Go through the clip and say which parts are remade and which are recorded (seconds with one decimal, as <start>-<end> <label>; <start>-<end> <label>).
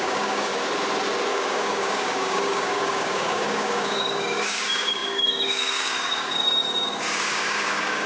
0.0-0.5 remade; 0.5-1.3 recorded; 1.3-8.1 remade